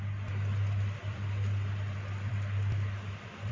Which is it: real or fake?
fake